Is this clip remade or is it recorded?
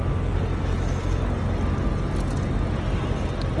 recorded